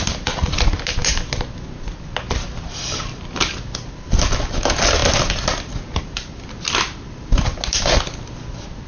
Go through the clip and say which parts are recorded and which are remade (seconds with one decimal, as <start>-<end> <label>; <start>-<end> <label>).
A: 0.0-8.9 recorded